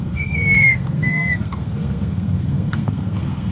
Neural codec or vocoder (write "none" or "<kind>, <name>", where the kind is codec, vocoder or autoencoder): codec, SNAC